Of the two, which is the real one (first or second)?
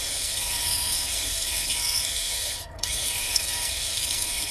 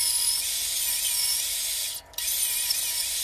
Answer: second